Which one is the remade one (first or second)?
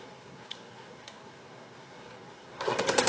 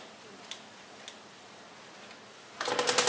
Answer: first